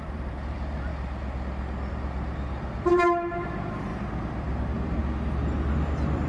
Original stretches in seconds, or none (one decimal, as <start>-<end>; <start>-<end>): 0.9-1.9; 3.9-4.6; 5.0-6.3

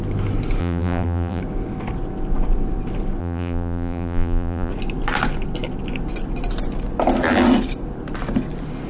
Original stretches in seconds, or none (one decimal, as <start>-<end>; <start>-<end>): 0.0-0.6; 1.4-3.2; 4.7-8.9

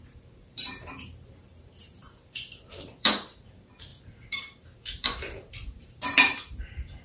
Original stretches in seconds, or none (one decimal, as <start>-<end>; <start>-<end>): none

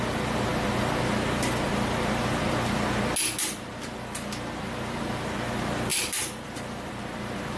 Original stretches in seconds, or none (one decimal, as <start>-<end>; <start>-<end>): 0.0-5.9; 6.9-7.6

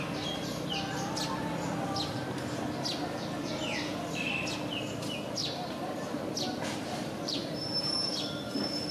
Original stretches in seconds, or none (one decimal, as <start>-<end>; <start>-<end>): 0.0-5.4; 6.3-6.8; 8.1-8.9

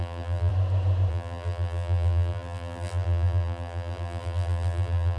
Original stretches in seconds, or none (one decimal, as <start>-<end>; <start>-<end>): 0.5-1.1

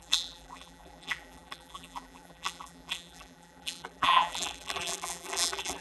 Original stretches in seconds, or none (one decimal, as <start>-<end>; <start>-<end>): none

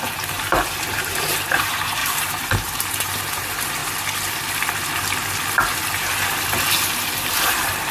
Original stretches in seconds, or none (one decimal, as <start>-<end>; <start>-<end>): 3.8-7.5